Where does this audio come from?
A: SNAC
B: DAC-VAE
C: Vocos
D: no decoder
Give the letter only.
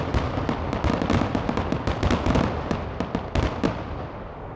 D